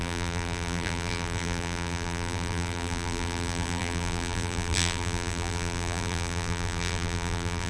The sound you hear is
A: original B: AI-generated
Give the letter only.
B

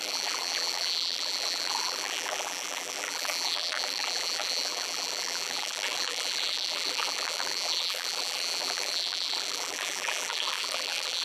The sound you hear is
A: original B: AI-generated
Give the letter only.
B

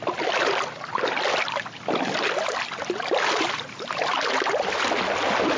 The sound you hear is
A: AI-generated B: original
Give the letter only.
B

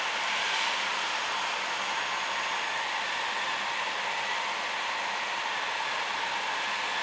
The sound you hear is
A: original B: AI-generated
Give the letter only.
A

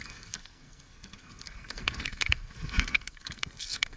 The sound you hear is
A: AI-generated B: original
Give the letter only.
A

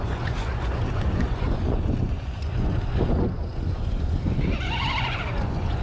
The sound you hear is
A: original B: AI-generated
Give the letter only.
B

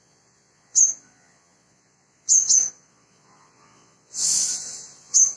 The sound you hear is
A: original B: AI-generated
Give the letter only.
B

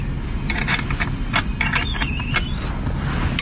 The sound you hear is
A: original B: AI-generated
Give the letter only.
A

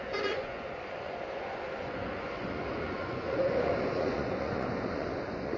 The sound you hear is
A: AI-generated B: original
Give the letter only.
A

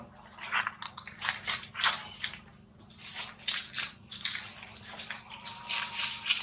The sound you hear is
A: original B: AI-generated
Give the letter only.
A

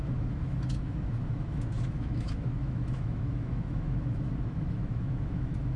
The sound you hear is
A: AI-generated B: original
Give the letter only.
A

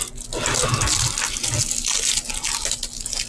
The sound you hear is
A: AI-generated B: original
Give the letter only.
B